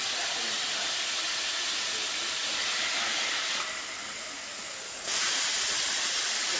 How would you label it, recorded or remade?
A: recorded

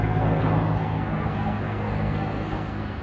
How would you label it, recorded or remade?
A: remade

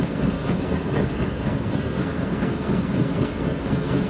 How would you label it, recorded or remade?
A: remade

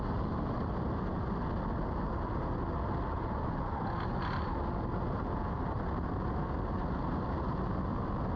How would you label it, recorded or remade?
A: recorded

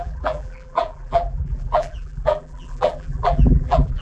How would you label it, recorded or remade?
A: remade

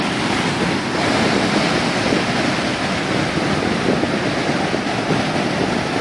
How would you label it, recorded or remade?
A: recorded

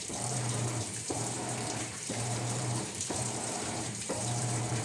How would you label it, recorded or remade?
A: remade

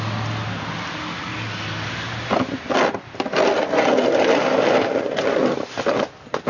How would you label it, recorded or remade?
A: recorded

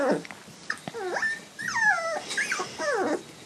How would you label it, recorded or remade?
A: recorded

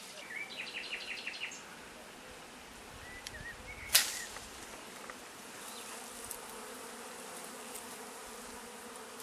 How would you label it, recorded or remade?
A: recorded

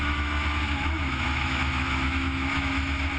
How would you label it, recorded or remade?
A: remade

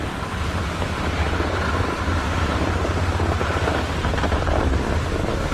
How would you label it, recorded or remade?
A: recorded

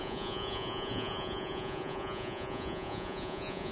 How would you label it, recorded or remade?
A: remade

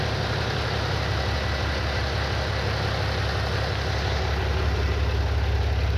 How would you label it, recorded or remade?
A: recorded